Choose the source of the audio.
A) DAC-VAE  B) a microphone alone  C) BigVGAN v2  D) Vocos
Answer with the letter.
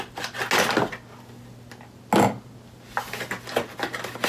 B